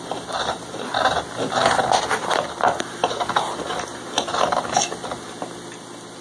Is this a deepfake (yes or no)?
no